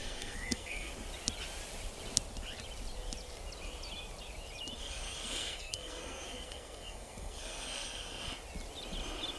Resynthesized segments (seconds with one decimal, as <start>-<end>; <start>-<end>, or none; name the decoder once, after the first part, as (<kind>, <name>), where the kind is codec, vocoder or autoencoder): 0.0-0.9 (codec, SNAC); 4.8-8.3